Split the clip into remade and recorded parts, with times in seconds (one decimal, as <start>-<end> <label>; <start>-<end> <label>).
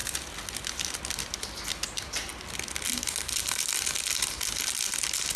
0.0-5.4 recorded